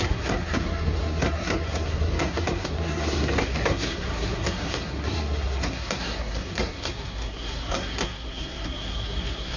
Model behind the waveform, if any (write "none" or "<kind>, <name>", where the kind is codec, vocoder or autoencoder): codec, SNAC